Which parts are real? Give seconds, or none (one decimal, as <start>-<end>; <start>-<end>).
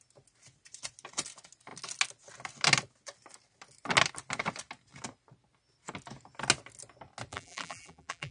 0.0-7.3